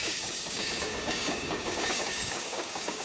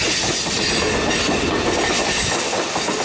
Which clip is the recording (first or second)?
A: second